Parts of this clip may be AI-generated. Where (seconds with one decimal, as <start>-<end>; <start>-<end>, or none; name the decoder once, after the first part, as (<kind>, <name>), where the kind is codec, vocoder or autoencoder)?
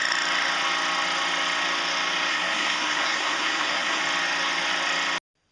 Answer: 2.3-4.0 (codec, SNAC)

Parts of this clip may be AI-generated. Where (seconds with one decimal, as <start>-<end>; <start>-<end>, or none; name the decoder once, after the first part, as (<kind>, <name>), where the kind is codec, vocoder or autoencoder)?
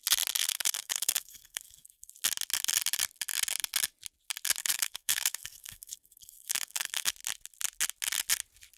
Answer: 0.4-2.1 (codec, SNAC); 4.6-7.1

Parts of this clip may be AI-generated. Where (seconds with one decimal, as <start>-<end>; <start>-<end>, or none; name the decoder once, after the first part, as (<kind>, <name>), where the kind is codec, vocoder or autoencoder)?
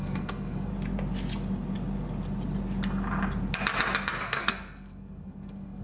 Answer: 0.0-0.7 (codec, SNAC); 4.2-5.8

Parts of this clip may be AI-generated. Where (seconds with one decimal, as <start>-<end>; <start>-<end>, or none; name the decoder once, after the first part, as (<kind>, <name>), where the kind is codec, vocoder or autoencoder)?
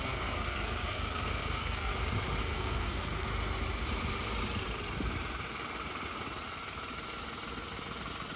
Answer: 0.0-1.9 (codec, SNAC); 2.4-3.3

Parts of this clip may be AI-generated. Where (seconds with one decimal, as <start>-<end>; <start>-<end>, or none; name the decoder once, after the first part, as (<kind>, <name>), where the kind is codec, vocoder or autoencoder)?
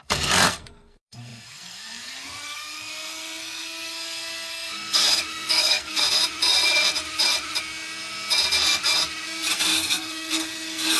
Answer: 0.0-6.0 (codec, SNAC); 9.5-11.0